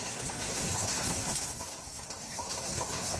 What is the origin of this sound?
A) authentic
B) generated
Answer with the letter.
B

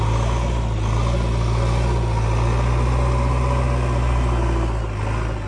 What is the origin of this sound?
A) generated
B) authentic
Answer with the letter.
B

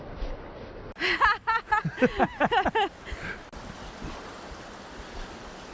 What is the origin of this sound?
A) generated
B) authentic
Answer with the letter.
B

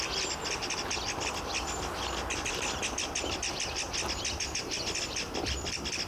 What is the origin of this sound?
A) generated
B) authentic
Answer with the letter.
B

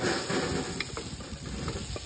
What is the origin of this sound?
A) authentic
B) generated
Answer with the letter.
A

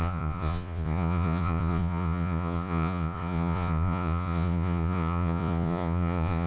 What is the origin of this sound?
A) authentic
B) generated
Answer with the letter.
B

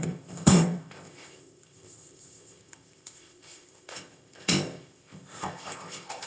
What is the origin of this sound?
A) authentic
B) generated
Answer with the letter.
B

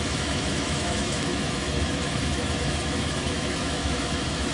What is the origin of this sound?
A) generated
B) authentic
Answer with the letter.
A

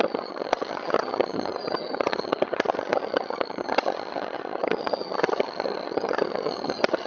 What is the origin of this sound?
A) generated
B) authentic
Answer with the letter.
A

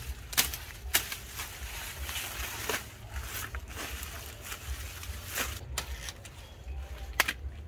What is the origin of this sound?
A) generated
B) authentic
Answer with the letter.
B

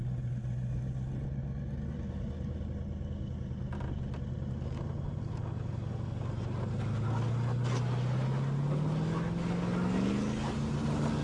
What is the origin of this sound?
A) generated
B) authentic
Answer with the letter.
B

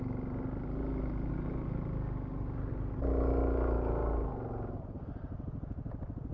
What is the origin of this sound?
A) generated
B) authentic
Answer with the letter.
B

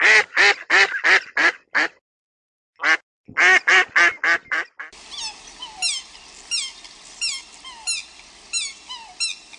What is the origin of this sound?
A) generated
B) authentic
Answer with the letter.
B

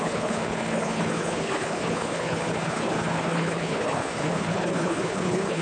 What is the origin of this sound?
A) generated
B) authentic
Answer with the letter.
A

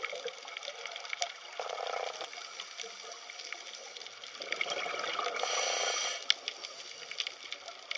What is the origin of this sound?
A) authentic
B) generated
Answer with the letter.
A